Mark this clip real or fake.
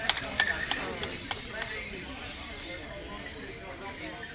real